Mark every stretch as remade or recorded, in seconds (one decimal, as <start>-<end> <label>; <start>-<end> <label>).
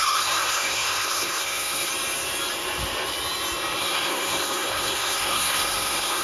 0.0-1.9 remade; 1.9-3.8 recorded; 3.8-6.2 remade